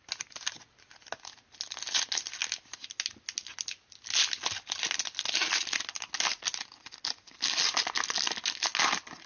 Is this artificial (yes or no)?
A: no